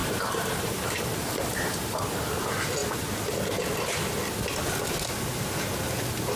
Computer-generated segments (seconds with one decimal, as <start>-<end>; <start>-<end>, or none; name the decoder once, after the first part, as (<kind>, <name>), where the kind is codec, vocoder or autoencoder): 0.0-2.0 (vocoder, BigVGAN v2)